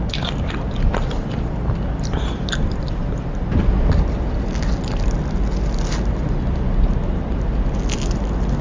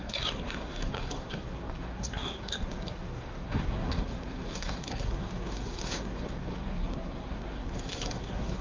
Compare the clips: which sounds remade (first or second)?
second